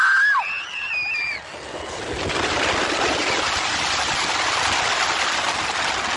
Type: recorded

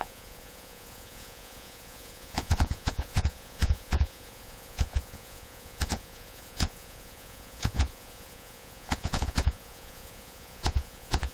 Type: remade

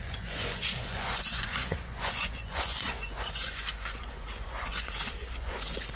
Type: remade